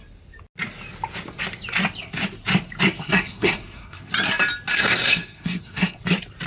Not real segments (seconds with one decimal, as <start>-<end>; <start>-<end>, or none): 3.0-4.1; 4.7-6.0